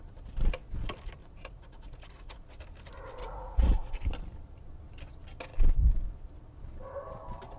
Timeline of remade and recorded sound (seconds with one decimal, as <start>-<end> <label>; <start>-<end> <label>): 0.0-1.2 recorded; 1.2-2.6 remade; 2.6-3.2 recorded; 3.2-4.0 remade; 4.0-7.6 recorded